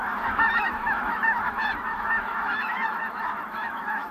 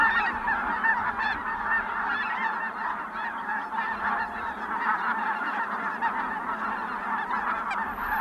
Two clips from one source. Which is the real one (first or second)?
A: second